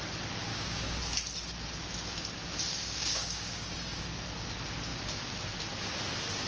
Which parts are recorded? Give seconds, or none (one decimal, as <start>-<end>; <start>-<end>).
0.0-0.5; 1.0-2.7; 4.0-6.5